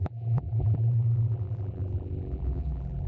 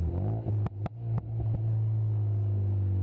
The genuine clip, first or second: second